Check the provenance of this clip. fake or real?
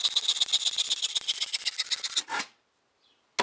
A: real